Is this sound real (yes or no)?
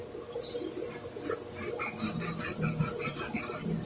yes